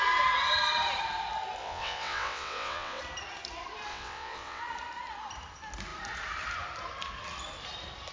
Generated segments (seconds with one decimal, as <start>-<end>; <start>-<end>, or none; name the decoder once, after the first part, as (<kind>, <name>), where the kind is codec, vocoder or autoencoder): 1.6-3.0 (vocoder, WaveNeXt); 3.9-4.6